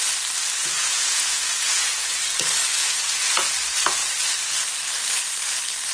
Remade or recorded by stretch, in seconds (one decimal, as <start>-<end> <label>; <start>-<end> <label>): 0.0-0.6 recorded; 0.6-2.2 remade; 2.2-2.8 recorded; 2.8-3.5 remade; 3.5-5.9 recorded